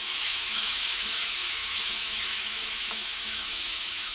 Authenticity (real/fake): fake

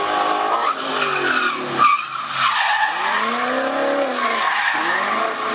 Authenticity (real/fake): real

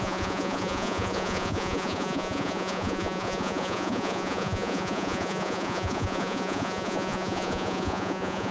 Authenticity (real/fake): fake